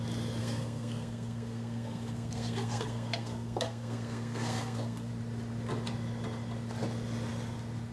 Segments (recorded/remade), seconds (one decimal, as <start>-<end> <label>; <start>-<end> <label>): 0.0-0.4 recorded; 0.4-5.1 remade; 5.1-7.9 recorded